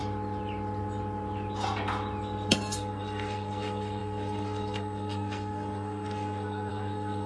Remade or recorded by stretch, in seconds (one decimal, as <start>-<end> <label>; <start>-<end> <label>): 0.0-2.5 recorded; 2.5-7.3 remade